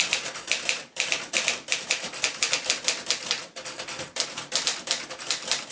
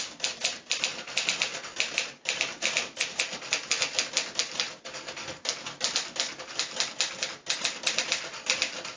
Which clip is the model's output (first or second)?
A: first